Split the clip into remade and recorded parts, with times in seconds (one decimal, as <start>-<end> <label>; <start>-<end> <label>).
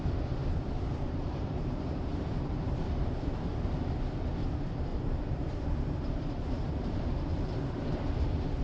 0.0-0.4 recorded; 0.4-3.5 remade; 3.5-4.9 recorded; 4.9-8.6 remade